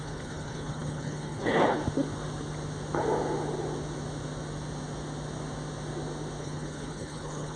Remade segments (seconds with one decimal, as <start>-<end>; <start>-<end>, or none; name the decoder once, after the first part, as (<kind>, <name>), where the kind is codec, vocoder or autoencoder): 0.0-1.8 (codec, HILCodec); 6.4-7.6